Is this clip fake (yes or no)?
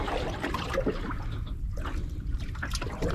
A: no